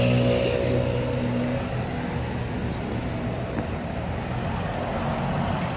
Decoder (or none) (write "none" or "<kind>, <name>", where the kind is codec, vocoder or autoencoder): none